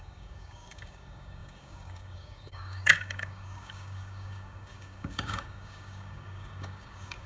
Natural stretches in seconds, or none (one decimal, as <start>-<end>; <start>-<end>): none